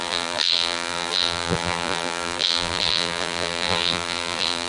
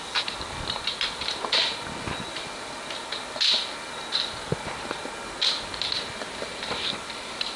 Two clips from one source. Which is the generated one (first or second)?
first